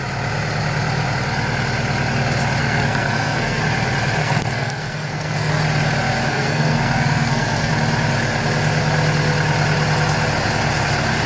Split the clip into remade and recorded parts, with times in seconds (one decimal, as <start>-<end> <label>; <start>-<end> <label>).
0.0-2.6 recorded; 2.6-3.6 remade; 3.6-4.2 recorded; 4.2-5.5 remade; 5.5-6.3 recorded; 6.3-7.7 remade; 7.7-11.3 recorded